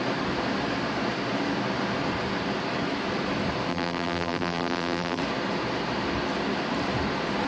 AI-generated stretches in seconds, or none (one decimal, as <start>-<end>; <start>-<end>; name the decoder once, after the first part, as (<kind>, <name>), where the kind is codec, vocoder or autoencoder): 3.7-5.2 (vocoder, BigVGAN v2)